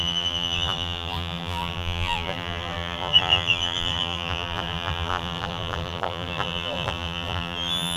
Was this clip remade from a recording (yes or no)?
yes